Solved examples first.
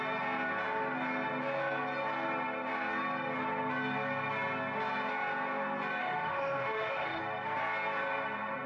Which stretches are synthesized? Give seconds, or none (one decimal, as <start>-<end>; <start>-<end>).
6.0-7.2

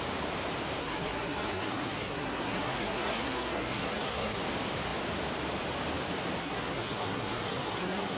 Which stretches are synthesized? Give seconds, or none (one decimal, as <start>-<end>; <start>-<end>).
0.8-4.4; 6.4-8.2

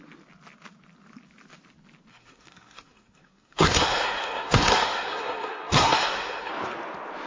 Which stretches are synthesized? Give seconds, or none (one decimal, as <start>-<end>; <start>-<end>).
2.1-6.5

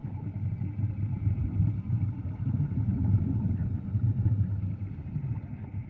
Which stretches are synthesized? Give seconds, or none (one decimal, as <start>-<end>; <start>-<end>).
3.2-3.6; 4.9-5.9

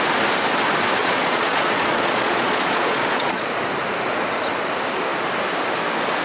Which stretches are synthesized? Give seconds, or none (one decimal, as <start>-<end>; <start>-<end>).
1.0-3.5